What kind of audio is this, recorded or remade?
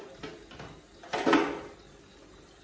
recorded